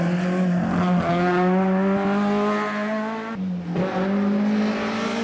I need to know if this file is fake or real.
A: real